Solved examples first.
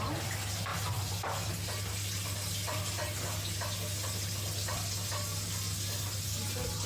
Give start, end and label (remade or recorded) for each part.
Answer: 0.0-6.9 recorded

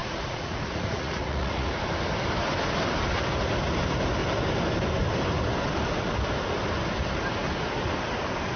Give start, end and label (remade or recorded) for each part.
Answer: 0.0-1.8 remade; 1.8-8.6 recorded

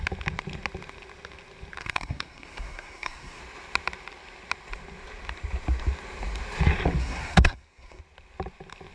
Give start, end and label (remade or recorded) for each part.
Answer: 0.0-1.8 recorded; 1.8-3.4 remade; 3.4-7.0 recorded; 7.0-8.0 remade; 8.0-8.9 recorded